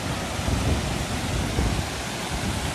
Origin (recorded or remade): recorded